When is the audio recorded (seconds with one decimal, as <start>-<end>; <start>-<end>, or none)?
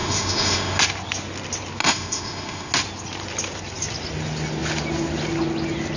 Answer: 0.8-1.8; 2.7-6.0